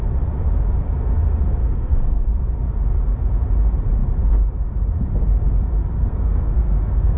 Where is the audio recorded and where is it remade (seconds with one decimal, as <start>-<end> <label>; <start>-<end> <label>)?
0.0-1.6 recorded; 1.6-2.4 remade; 2.4-6.0 recorded; 6.0-7.2 remade